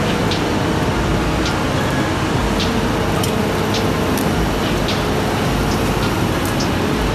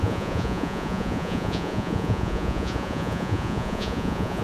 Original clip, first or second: first